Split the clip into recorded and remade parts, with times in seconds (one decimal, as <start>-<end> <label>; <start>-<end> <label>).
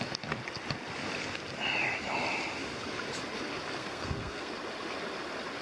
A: 0.0-3.8 recorded; 3.8-4.5 remade; 4.5-5.6 recorded